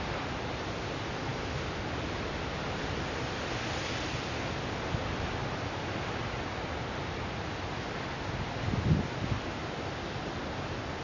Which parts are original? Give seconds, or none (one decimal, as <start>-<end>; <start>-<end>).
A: 0.0-11.0